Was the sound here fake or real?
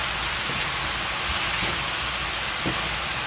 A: real